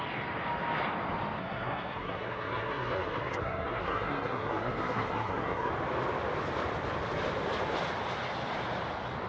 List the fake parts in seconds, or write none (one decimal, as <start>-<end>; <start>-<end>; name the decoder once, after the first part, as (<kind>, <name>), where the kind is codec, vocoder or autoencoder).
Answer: 1.4-5.7 (codec, SNAC)